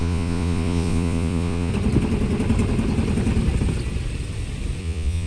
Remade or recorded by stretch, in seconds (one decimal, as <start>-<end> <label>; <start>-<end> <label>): 0.0-1.7 remade; 1.7-4.8 recorded; 4.8-5.3 remade